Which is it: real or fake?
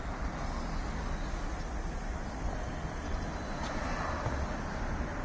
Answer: real